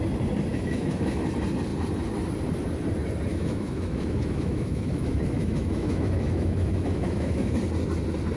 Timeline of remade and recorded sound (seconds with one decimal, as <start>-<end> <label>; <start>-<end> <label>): 0.0-0.5 recorded; 0.5-1.2 remade; 1.2-3.3 recorded; 3.3-7.6 remade; 7.6-8.4 recorded